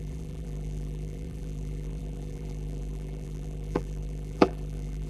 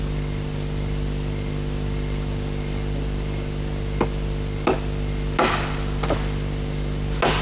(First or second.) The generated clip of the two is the first